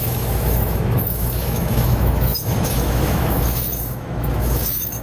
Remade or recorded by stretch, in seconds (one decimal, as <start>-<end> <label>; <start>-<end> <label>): 0.0-5.0 remade